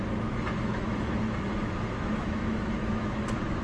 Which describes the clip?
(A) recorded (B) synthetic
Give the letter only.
B